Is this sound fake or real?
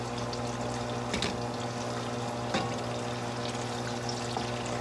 real